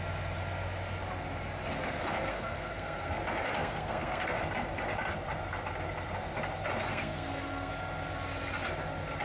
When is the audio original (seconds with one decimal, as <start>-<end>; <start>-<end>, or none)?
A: 0.0-2.3; 3.2-3.6; 4.4-6.9; 7.7-9.2